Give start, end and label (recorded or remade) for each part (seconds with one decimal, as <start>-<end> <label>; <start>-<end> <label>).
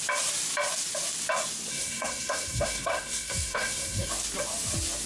0.0-1.7 recorded; 1.7-4.1 remade; 4.1-5.1 recorded